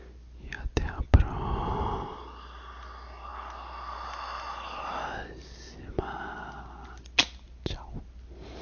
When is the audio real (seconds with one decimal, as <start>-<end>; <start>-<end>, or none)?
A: 0.0-8.6